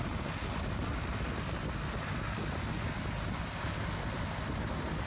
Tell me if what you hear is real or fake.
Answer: real